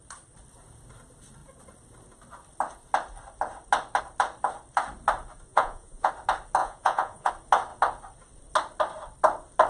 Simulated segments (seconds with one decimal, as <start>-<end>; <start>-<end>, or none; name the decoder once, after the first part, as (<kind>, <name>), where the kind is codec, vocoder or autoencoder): 5.5-6.1 (vocoder, Vocos); 6.6-7.3